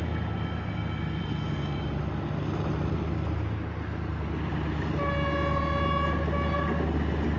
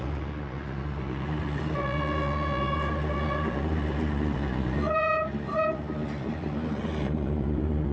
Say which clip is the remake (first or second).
second